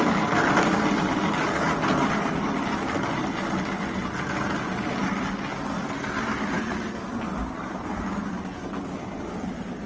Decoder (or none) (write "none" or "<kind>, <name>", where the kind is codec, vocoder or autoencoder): none